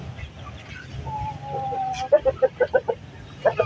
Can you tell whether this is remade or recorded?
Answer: recorded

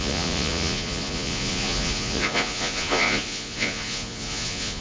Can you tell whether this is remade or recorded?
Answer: remade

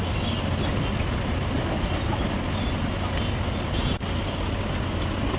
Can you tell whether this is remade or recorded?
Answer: recorded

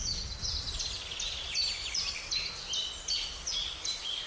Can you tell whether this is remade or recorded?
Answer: recorded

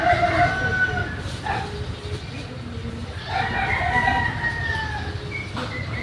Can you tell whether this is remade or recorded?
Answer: recorded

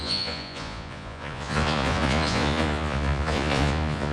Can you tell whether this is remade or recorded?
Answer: remade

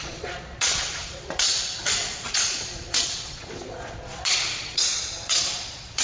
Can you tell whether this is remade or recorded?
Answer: remade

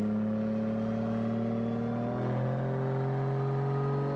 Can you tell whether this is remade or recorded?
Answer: recorded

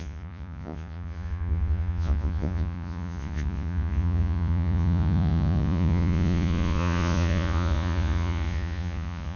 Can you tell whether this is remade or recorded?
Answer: remade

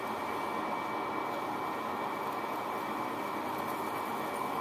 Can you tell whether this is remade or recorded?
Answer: recorded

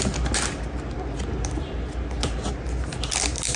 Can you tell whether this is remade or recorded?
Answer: recorded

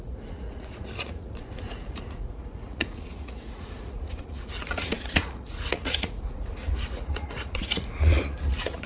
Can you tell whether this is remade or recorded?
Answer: remade